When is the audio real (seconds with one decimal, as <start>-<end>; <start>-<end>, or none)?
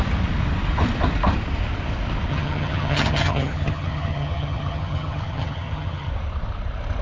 0.0-2.3; 6.1-7.0